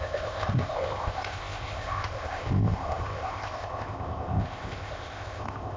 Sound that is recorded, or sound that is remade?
remade